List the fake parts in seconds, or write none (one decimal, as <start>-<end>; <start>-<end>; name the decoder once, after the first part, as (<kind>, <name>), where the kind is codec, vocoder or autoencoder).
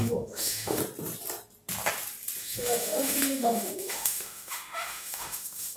0.0-0.8 (autoencoder, DAC-VAE); 2.4-5.8